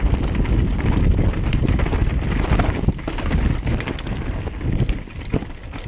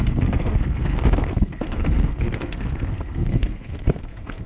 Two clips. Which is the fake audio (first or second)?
second